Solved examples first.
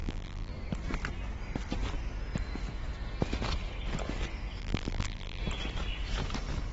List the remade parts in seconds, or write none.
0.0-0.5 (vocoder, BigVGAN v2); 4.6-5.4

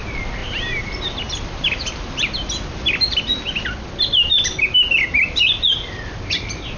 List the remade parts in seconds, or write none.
none

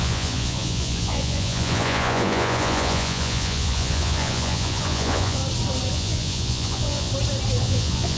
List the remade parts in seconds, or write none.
0.0-5.4 (vocoder, Vocos); 5.9-7.1; 7.6-8.2

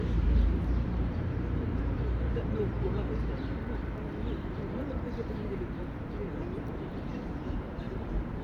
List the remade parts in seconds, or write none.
0.0-8.4 (vocoder, BigVGAN v2)

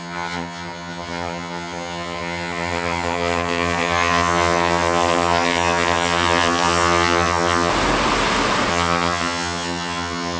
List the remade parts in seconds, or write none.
0.0-7.7 (vocoder, HiFi-GAN); 8.7-10.4

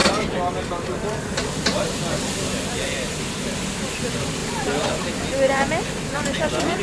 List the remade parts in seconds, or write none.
4.4-5.0 (vocoder, BigVGAN v2)

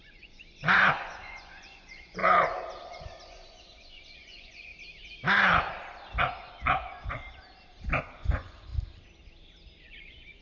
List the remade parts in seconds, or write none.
0.0-2.2 (vocoder, Vocos); 2.8-4.7; 8.0-8.7; 9.8-10.4